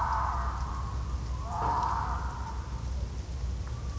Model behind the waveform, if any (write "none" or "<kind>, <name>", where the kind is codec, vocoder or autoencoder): none